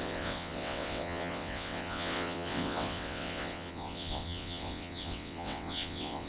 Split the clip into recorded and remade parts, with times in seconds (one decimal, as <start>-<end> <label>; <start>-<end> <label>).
0.0-6.3 remade